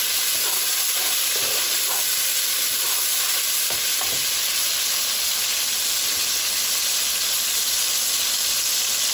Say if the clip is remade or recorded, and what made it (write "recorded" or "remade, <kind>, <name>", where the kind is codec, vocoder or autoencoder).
recorded